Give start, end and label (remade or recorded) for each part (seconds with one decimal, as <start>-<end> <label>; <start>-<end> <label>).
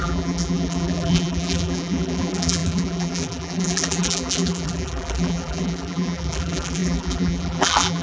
0.0-8.0 remade